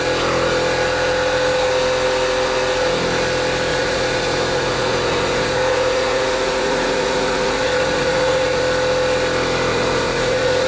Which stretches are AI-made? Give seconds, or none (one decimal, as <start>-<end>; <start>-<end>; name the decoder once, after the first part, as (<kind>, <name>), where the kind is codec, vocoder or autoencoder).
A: 3.7-8.6 (vocoder, Vocos); 9.7-10.7